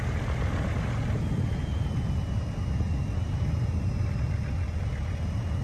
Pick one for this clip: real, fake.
real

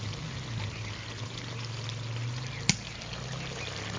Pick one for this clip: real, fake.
real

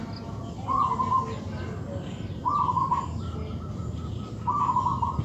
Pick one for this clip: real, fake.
real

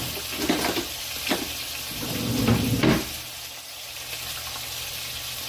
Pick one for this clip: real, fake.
real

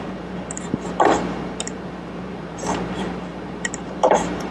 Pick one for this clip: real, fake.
fake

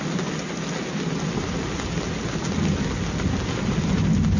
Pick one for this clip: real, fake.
real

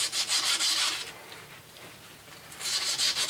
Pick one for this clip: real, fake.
fake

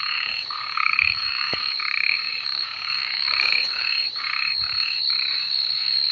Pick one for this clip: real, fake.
fake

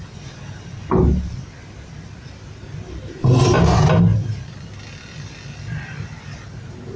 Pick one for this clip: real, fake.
real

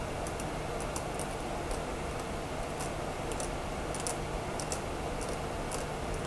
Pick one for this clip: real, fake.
real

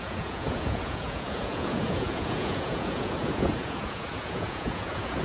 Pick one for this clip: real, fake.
fake